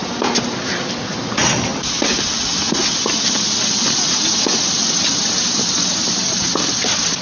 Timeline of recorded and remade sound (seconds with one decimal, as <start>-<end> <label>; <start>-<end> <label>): 0.0-7.2 recorded